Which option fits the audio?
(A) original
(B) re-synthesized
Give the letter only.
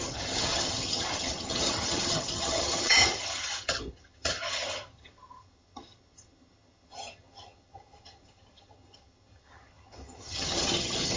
B